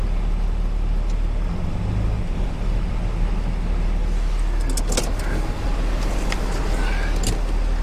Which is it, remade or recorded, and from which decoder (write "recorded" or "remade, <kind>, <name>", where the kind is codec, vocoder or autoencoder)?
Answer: recorded